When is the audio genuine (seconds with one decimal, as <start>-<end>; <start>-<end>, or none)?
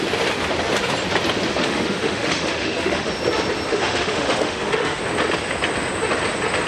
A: 0.0-1.5; 3.1-3.7; 5.0-6.7